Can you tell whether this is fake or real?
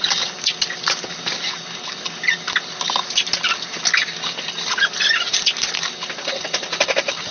real